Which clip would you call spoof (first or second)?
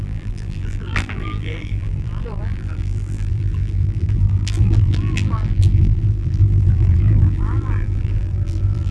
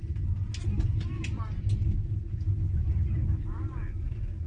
first